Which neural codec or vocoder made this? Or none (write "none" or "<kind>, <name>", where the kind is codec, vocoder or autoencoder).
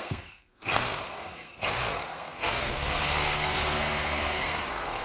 codec, SNAC